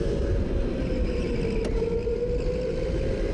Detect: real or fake real